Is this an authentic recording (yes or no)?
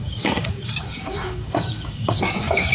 no